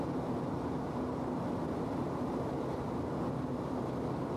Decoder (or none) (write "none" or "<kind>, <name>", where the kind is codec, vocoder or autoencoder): none